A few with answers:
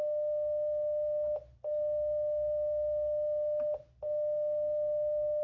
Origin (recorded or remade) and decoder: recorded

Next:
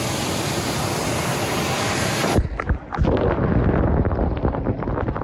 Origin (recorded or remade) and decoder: recorded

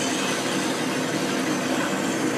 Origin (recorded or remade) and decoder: recorded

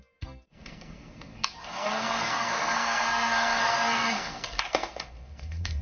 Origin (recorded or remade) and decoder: remade, codec, SNAC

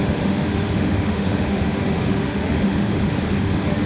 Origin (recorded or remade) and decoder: remade, autoencoder, DAC-VAE